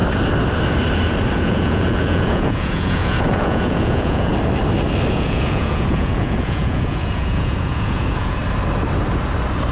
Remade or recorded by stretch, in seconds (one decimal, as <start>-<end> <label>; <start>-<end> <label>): 0.0-1.3 recorded; 1.3-4.3 remade; 4.3-5.1 recorded; 5.1-8.4 remade; 8.4-9.7 recorded